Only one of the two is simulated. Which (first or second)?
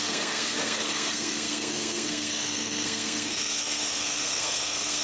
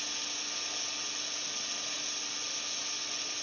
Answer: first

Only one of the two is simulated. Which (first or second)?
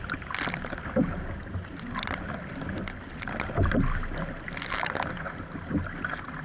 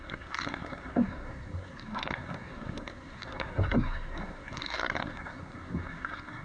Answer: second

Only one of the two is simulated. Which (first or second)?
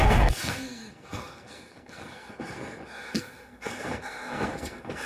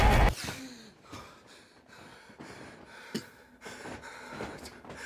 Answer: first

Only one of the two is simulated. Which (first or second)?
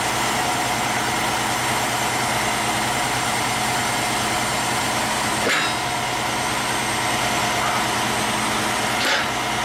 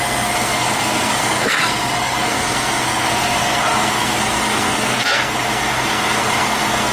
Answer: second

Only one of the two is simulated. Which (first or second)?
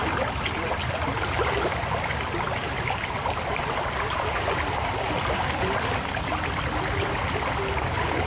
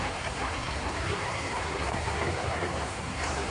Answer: second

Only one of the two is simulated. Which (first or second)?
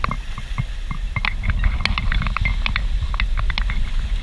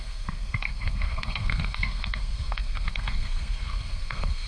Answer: second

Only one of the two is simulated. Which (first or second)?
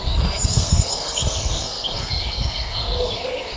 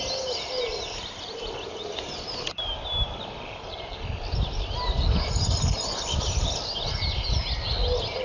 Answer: first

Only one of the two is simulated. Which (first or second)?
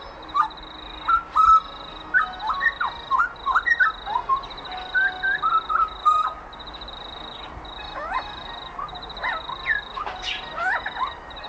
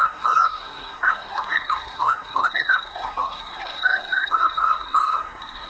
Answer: second